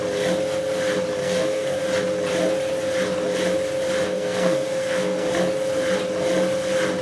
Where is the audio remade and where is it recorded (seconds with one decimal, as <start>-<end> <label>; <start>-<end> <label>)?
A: 0.0-1.2 recorded; 1.2-1.8 remade; 1.8-4.0 recorded; 4.0-5.3 remade; 5.3-7.0 recorded